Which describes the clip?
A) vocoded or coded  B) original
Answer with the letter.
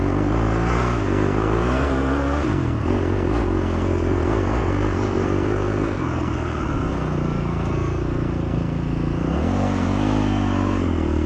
A